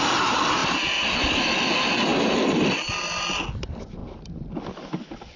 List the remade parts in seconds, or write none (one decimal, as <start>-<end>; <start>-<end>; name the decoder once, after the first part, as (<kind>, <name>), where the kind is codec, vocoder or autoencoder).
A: none